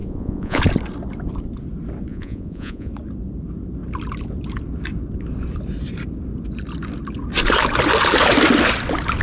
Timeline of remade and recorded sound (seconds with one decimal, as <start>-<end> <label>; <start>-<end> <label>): 0.0-0.6 remade; 0.6-2.1 recorded; 2.1-2.9 remade; 2.9-9.2 recorded